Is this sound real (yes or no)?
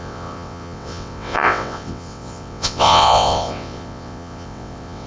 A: no